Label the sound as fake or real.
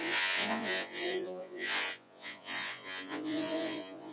fake